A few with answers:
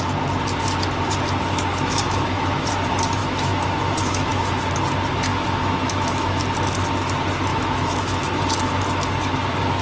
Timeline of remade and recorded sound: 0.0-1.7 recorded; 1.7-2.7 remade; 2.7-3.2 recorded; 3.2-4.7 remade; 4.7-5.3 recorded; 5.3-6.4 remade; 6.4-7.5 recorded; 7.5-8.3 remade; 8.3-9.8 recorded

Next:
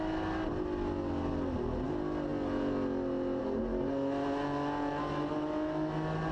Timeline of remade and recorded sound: 0.0-6.3 recorded

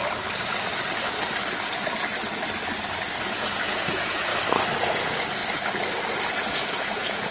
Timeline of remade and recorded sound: 0.0-3.2 recorded; 3.2-4.3 remade; 4.3-4.8 recorded; 4.8-5.4 remade; 5.4-6.7 recorded; 6.7-7.3 remade

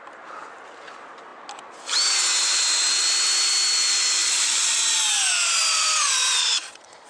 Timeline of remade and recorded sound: 0.0-4.2 recorded; 4.2-4.8 remade; 4.8-6.4 recorded; 6.4-7.1 remade

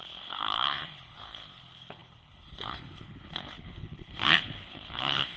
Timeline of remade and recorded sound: 0.0-5.4 remade

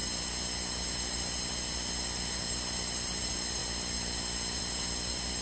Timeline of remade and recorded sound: 0.0-5.4 recorded